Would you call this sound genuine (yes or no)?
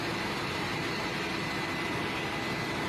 yes